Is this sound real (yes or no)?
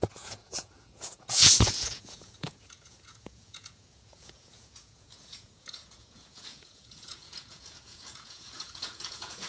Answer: no